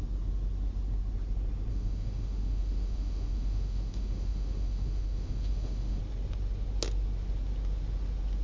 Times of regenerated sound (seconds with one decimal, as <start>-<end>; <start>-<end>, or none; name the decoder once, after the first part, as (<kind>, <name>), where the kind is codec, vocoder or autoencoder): 1.7-6.0 (autoencoder, DAC-VAE)